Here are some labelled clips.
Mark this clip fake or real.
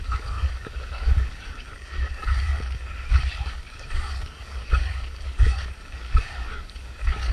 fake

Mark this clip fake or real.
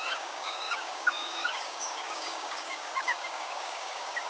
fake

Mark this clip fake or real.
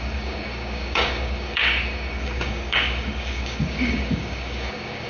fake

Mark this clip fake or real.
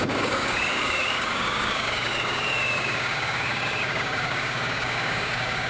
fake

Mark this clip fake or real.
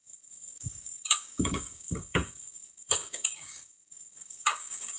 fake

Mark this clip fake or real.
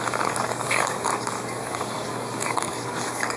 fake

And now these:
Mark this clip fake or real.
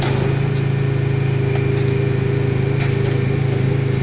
real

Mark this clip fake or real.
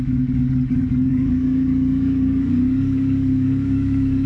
fake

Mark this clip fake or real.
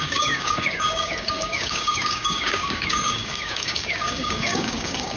fake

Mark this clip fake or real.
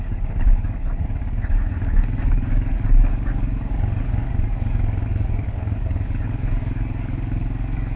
fake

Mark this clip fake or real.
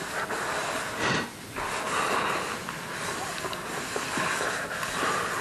real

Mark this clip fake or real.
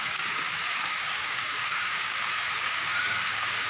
fake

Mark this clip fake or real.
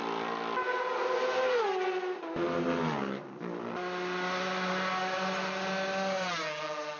real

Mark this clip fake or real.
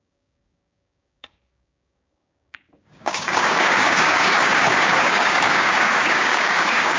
fake